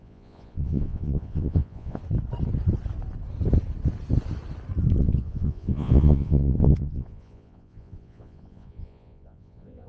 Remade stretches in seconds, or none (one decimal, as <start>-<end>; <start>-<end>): 0.0-2.0; 5.0-9.9